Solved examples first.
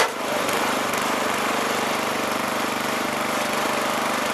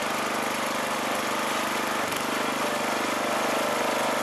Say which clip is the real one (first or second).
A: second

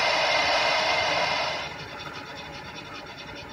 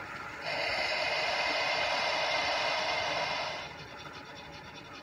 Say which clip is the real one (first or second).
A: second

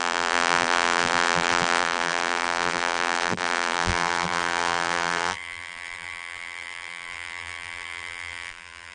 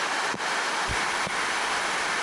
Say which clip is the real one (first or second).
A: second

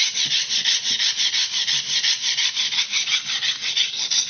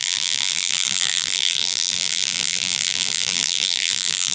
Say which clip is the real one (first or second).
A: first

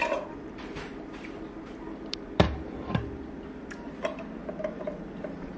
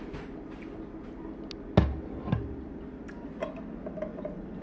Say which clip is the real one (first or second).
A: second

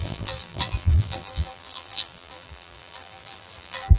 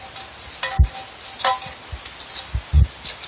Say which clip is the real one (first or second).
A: second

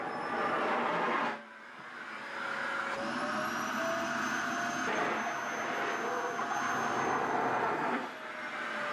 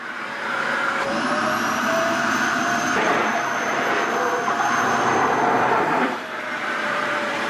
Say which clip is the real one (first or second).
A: first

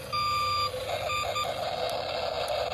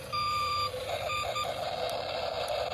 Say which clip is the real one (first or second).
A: first